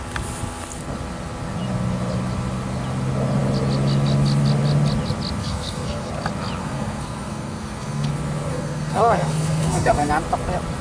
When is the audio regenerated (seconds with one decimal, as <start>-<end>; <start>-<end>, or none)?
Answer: 5.4-6.1; 6.6-8.1; 8.5-10.1